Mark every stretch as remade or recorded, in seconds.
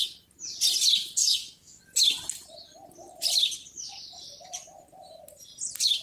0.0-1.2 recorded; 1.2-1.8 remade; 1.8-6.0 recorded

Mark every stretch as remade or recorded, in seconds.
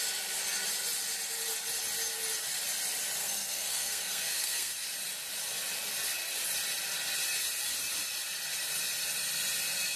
0.0-3.2 recorded; 3.2-4.7 remade; 4.7-10.0 recorded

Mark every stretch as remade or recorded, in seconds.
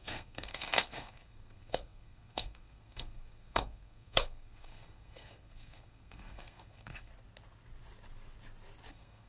0.0-7.1 remade; 7.1-8.9 recorded; 8.9-9.3 remade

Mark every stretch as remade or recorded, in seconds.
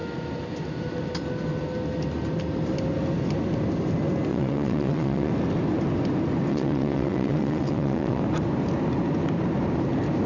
0.0-4.3 recorded; 4.3-5.3 remade; 5.3-6.5 recorded; 6.5-8.2 remade; 8.2-10.3 recorded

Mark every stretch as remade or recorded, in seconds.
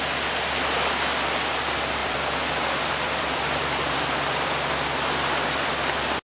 0.0-2.0 recorded; 2.0-5.7 remade; 5.7-6.2 recorded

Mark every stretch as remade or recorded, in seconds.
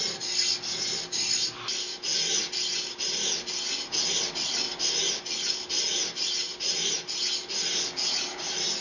0.0-8.8 recorded